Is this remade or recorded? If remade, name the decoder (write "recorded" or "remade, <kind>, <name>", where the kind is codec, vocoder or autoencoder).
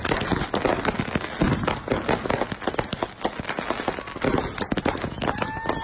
recorded